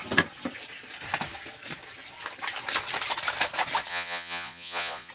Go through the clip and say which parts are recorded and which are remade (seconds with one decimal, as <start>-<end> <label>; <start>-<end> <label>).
0.0-3.9 recorded; 3.9-5.1 remade